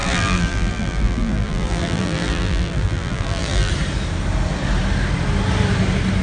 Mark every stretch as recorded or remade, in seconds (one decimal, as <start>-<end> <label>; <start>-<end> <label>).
0.0-3.7 remade; 3.7-6.2 recorded